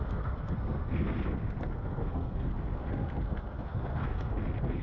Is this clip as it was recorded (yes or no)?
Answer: no